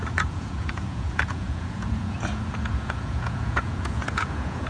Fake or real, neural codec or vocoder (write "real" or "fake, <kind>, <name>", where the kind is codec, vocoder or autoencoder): fake, vocoder, Vocos